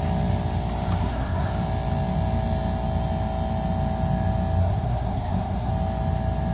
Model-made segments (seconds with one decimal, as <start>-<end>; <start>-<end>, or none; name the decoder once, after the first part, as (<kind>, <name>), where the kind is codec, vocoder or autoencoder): 1.0-1.5 (codec, SNAC); 4.6-5.7